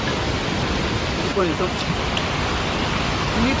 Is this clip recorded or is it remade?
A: recorded